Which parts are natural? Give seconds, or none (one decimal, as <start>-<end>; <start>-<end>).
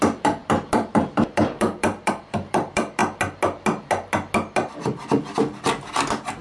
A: 3.0-6.4